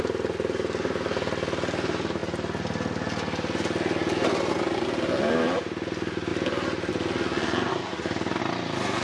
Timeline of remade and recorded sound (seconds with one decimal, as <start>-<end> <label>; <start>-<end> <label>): 0.0-7.7 recorded; 7.7-8.4 remade; 8.4-9.0 recorded